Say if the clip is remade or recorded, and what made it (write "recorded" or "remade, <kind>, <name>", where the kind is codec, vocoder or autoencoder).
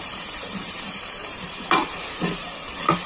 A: remade, vocoder, BigVGAN v2